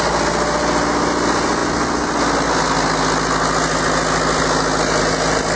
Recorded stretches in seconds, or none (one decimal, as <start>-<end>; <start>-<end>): 0.0-5.6